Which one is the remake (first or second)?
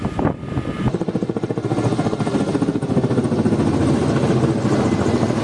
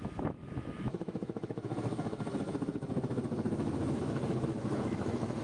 second